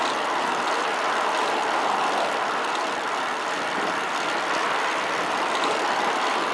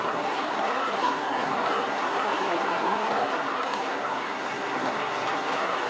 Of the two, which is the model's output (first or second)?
second